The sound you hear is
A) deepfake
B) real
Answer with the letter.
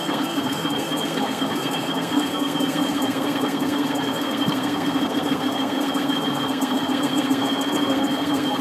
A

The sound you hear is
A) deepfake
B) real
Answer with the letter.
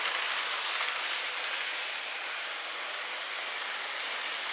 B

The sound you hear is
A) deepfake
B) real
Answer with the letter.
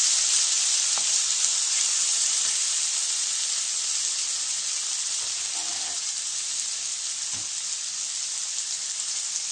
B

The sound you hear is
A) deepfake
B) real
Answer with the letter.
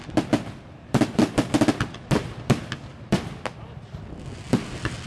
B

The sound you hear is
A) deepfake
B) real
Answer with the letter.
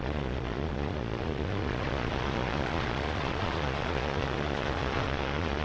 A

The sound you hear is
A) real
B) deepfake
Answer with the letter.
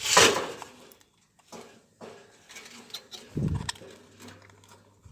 A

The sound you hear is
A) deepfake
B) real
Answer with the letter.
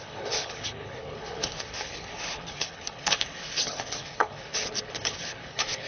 A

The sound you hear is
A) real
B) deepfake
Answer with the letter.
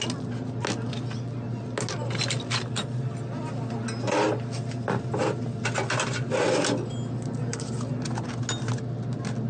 A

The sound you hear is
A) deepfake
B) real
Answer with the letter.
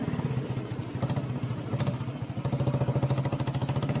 B